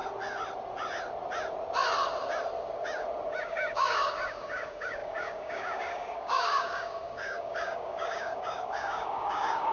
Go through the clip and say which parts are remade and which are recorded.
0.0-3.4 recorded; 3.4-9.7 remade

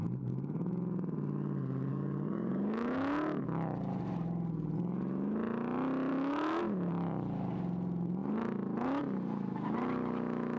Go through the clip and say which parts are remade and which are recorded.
0.0-1.9 recorded; 1.9-3.4 remade; 3.4-6.1 recorded; 6.1-6.6 remade; 6.6-10.6 recorded